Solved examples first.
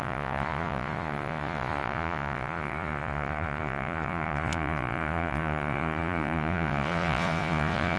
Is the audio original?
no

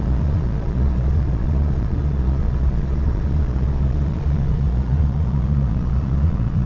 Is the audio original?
no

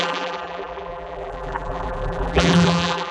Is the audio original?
no